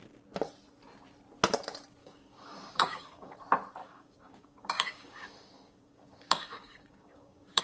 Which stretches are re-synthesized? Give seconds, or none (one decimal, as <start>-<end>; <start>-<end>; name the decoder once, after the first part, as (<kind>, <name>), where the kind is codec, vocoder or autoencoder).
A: 2.0-3.4 (codec, DAC); 3.8-7.6